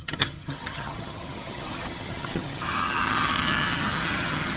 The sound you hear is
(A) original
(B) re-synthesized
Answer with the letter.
B